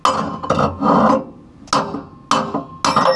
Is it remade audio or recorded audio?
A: recorded